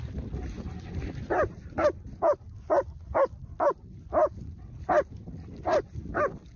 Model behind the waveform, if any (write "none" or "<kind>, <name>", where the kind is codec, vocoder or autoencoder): none